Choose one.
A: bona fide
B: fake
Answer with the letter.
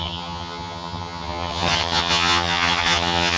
B